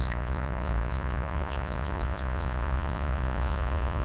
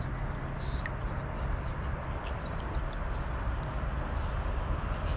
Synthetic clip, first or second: first